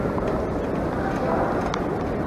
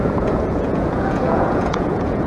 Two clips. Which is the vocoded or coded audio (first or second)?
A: second